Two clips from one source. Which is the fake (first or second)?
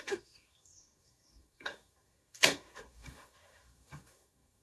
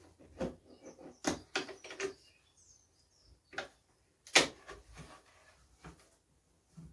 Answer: first